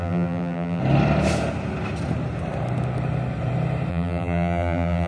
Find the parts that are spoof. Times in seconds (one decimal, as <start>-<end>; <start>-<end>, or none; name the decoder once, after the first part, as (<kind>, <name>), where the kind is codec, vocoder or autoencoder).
0.0-0.8 (vocoder, BigVGAN v2); 3.9-5.1